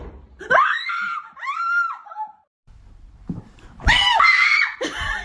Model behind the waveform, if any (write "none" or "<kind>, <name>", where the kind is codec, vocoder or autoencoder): vocoder, BigVGAN v2